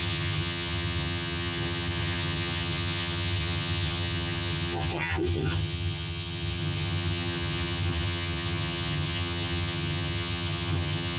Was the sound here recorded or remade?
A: remade